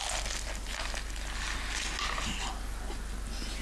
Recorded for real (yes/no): yes